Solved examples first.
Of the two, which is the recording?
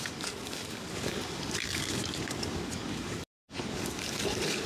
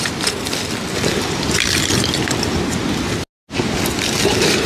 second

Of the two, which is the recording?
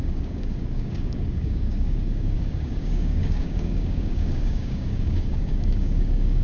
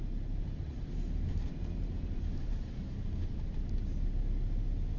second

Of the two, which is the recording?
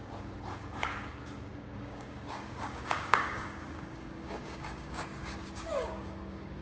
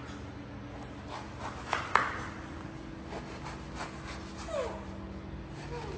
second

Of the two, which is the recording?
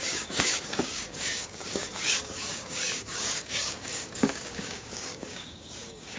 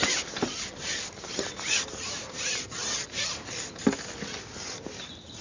second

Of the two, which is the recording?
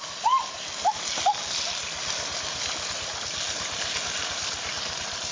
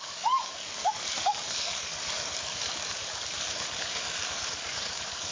first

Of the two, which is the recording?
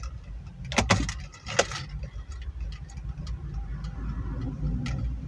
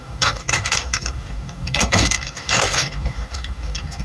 first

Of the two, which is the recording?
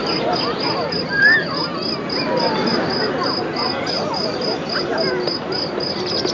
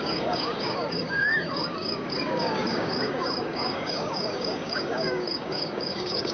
first